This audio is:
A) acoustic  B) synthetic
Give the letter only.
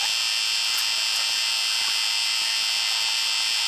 A